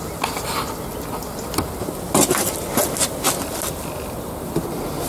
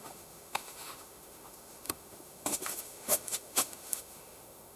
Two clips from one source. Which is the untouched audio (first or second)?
first